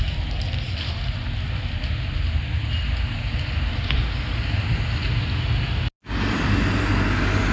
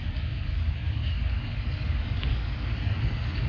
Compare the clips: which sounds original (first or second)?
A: first